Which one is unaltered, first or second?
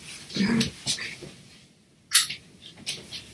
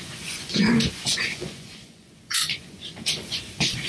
first